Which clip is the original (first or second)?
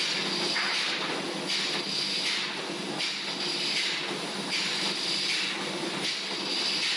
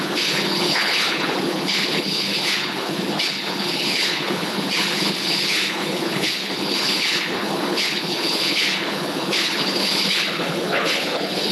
first